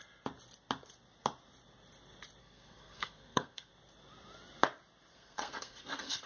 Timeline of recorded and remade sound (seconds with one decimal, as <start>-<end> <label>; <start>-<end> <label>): 0.0-2.4 recorded; 2.4-3.7 remade; 3.7-5.1 recorded; 5.1-6.3 remade

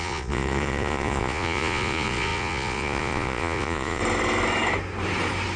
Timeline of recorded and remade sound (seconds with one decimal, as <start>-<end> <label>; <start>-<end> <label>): 0.0-4.0 remade; 4.0-5.6 recorded

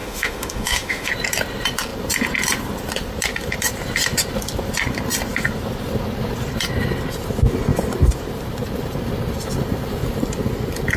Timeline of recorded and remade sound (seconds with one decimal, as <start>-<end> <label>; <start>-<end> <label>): 0.0-1.1 remade; 1.1-11.0 recorded

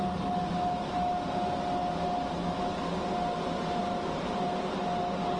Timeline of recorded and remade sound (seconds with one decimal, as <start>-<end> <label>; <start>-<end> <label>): 0.0-5.4 recorded

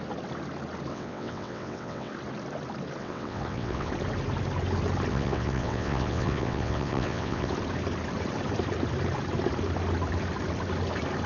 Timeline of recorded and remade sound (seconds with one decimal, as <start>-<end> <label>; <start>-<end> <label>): 0.0-0.9 recorded; 0.9-2.1 remade; 2.1-3.0 recorded; 3.0-3.9 remade; 3.9-5.1 recorded; 5.1-7.5 remade; 7.5-11.3 recorded

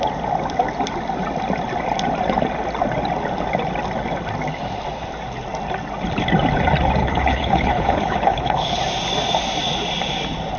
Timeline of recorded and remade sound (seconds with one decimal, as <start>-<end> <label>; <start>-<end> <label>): 0.0-7.0 recorded; 7.0-8.8 remade; 8.8-10.6 recorded

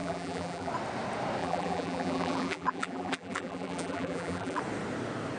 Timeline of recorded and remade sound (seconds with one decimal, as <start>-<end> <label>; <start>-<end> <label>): 0.0-0.7 remade; 0.7-1.4 recorded; 1.4-4.6 remade; 4.6-5.4 recorded